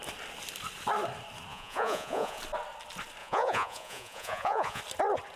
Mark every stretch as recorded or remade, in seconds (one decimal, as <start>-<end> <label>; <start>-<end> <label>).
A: 0.0-1.5 recorded; 1.5-2.4 remade; 2.4-3.2 recorded; 3.2-4.8 remade; 4.8-5.4 recorded

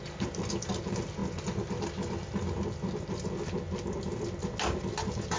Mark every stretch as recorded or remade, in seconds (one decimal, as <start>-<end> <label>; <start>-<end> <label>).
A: 0.0-5.4 recorded

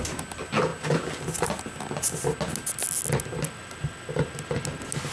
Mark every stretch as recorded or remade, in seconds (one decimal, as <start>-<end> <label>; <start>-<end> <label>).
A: 0.0-5.1 recorded

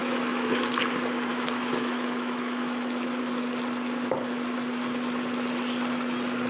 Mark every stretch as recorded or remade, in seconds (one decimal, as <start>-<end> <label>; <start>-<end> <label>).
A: 0.0-0.8 remade; 0.8-1.3 recorded; 1.3-3.2 remade; 3.2-6.5 recorded

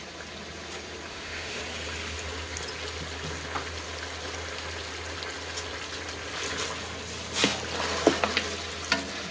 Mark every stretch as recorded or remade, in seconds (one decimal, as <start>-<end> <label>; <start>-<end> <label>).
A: 0.0-1.1 recorded; 1.1-1.6 remade; 1.6-9.3 recorded

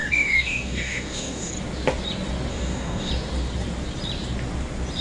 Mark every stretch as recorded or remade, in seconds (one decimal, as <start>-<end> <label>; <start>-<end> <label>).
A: 0.0-1.5 remade; 1.5-2.5 recorded; 2.5-3.1 remade; 3.1-5.0 recorded

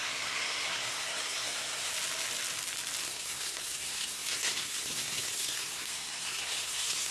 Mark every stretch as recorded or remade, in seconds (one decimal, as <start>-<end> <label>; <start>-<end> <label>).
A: 0.0-1.9 remade; 1.9-3.0 recorded; 3.0-7.1 remade

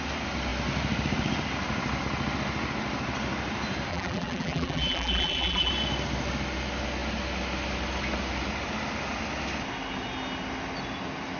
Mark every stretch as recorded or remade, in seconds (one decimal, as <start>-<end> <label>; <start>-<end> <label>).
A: 0.0-3.9 recorded; 3.9-5.7 remade; 5.7-11.4 recorded